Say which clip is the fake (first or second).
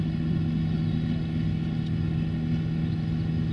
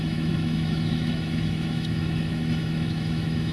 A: second